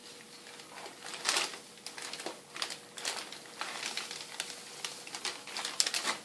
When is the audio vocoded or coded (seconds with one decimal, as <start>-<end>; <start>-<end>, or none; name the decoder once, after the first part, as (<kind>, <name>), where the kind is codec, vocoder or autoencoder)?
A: none